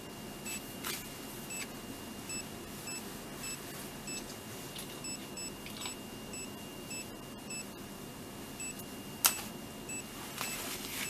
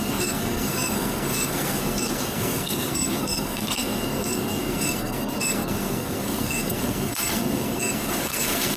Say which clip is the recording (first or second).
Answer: first